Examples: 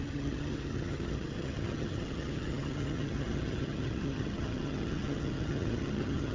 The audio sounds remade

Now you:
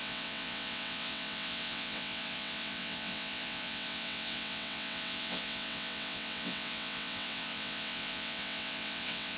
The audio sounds remade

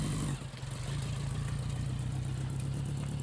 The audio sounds recorded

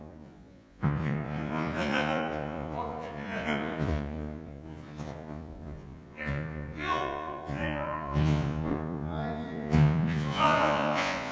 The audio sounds remade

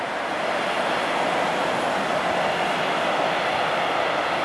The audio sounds recorded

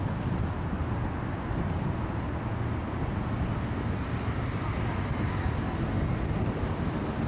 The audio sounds recorded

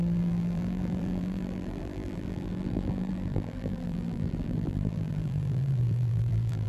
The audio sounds remade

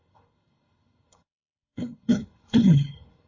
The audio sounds remade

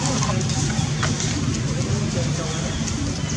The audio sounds recorded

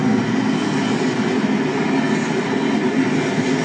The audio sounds recorded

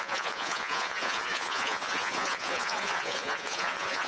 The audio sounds remade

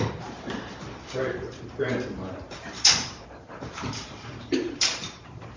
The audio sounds remade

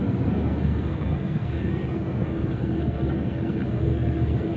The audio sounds remade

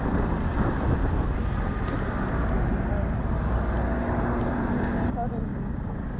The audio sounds recorded